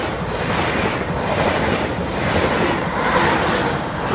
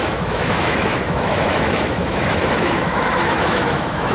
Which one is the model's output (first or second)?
second